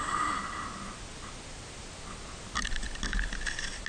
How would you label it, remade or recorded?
recorded